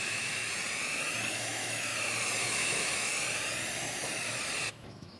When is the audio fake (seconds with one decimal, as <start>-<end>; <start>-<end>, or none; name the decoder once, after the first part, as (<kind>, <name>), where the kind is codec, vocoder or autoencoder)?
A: 0.0-0.4 (autoencoder, DAC-VAE); 1.3-1.9; 2.4-3.1; 4.7-5.2